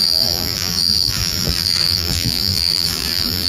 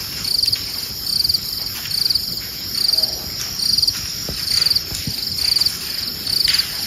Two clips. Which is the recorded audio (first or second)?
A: second